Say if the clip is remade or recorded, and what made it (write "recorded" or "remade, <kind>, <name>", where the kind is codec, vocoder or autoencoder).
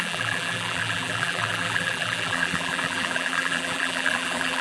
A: remade, vocoder, BigVGAN v2